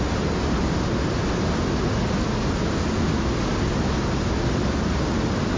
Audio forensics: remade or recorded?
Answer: recorded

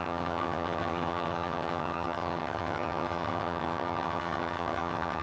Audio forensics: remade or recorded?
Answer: remade